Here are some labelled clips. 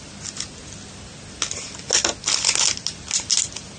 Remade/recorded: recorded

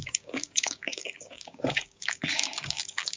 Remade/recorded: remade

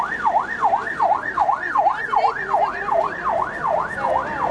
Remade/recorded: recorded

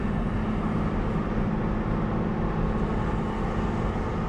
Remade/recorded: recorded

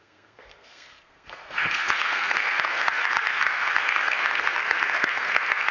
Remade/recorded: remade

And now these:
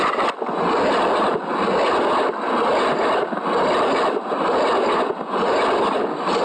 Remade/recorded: recorded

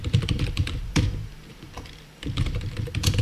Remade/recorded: remade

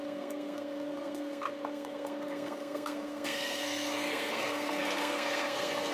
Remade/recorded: remade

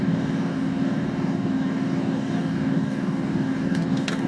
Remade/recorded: remade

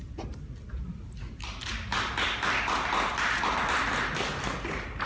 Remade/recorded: recorded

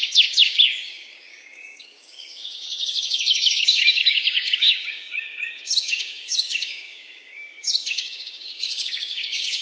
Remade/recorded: remade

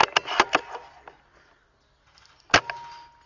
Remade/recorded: recorded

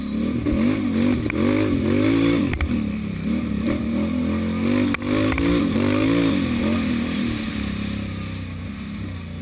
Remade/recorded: recorded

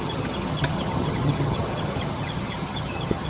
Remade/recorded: remade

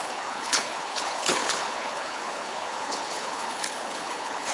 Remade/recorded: remade